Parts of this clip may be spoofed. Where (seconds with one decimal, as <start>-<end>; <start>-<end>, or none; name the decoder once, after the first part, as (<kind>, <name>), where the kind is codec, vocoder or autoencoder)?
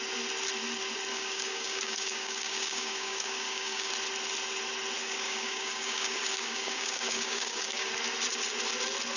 1.1-3.9 (codec, DAC); 5.0-7.9